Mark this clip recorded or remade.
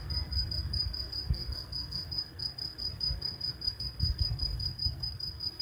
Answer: remade